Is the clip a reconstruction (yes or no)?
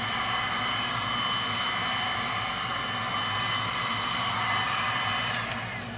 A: no